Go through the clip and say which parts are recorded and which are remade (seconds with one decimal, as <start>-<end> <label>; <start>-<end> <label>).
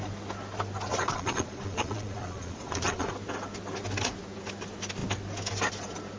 0.0-0.9 recorded; 0.9-3.1 remade; 3.1-6.2 recorded